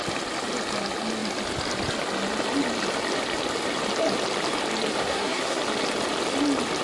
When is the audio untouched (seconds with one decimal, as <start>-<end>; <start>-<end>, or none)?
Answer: 0.0-5.0; 5.6-6.8